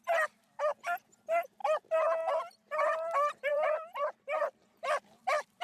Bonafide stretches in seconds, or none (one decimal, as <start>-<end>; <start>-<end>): 0.0-3.5